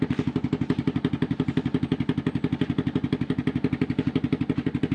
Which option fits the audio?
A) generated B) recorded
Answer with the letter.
B